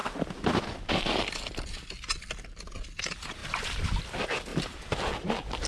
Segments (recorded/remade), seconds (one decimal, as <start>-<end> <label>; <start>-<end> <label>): 0.0-3.4 recorded; 3.4-4.0 remade; 4.0-4.5 recorded; 4.5-5.7 remade